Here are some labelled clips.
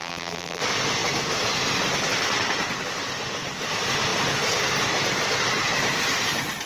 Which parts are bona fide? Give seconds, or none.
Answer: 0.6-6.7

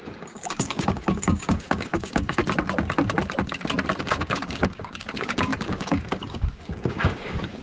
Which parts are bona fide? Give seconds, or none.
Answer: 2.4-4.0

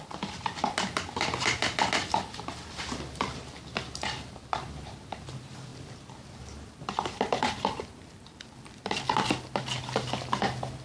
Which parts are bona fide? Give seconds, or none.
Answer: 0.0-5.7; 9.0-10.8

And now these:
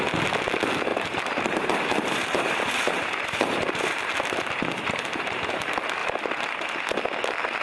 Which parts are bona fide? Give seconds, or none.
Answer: 0.0-0.9; 5.5-6.0; 6.9-7.6

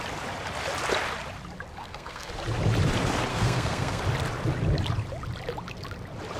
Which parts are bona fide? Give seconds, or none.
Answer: 0.0-1.8; 2.3-3.3; 4.0-6.4